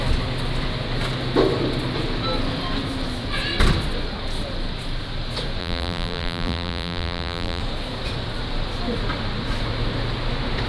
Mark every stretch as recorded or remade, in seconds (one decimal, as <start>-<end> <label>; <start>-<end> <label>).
0.0-5.6 recorded; 5.6-7.6 remade; 7.6-10.7 recorded